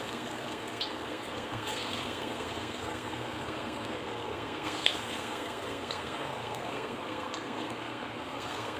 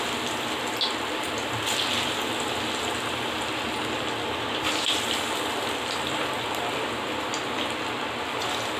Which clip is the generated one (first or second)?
first